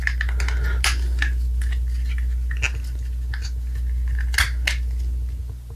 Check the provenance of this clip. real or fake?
real